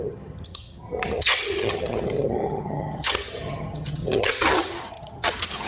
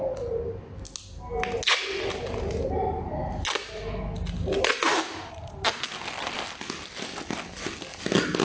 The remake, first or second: first